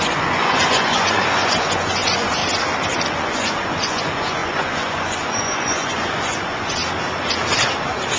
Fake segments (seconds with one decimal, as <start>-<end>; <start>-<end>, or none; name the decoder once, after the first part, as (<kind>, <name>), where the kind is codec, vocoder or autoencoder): 0.0-2.4 (vocoder, Vocos); 3.1-6.8